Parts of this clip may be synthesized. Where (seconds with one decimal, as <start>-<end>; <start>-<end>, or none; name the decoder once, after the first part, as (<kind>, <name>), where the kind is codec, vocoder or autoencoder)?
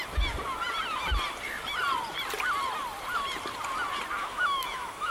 4.2-5.1 (autoencoder, DAC-VAE)